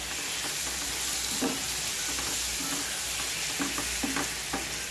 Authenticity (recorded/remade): recorded